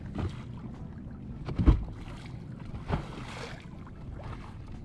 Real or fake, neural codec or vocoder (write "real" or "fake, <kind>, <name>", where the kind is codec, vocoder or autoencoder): real